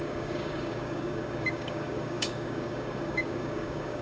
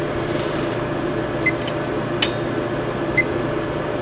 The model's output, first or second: first